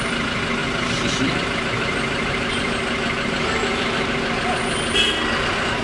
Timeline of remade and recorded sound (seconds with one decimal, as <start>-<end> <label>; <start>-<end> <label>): 0.0-0.6 recorded; 0.6-4.1 remade; 4.1-5.8 recorded